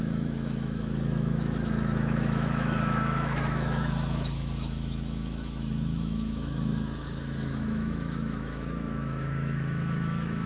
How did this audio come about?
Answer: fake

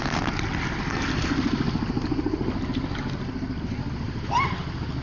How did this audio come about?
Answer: real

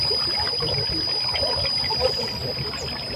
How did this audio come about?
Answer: real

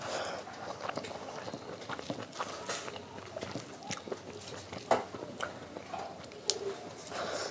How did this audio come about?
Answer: real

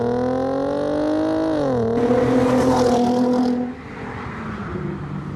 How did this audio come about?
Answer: real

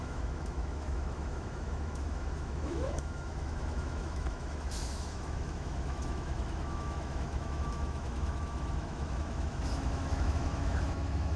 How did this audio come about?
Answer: fake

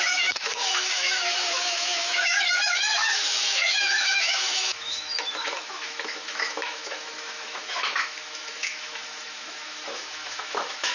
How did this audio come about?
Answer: fake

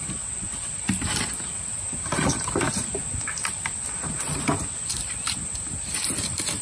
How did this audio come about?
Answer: real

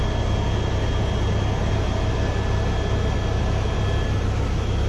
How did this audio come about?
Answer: real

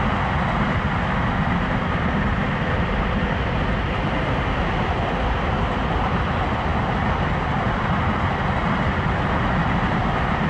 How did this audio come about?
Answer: real